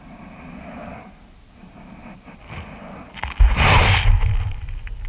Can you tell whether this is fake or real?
real